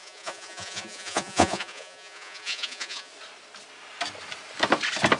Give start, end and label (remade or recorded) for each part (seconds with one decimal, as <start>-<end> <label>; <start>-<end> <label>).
0.0-3.1 remade; 3.1-5.2 recorded